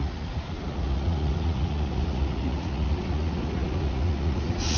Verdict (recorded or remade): remade